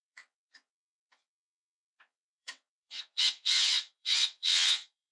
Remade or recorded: remade